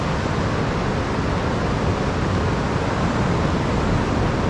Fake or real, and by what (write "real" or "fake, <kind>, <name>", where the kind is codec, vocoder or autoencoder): real